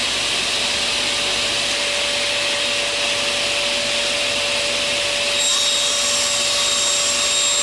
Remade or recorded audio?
recorded